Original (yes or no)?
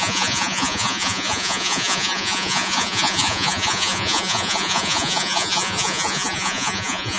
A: no